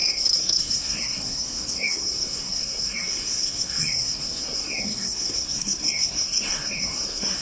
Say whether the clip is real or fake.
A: fake